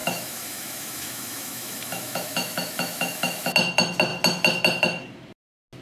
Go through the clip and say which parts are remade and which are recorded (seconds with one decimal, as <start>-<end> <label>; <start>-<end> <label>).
0.0-3.5 remade; 3.5-5.8 recorded